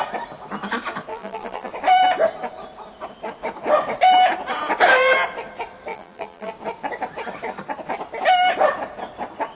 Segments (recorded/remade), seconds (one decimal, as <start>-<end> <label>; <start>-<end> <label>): 0.0-1.1 recorded; 1.1-1.7 remade; 1.7-5.9 recorded; 5.9-6.5 remade; 6.5-9.5 recorded